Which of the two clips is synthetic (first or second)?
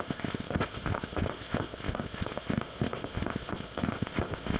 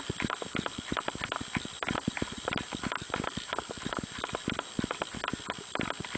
first